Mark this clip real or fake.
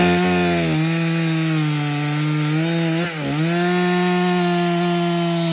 real